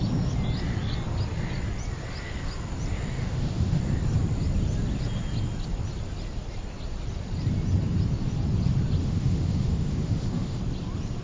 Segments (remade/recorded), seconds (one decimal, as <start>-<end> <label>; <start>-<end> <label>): 0.0-3.2 recorded; 3.2-3.8 remade; 3.8-9.0 recorded; 9.0-10.6 remade; 10.6-11.2 recorded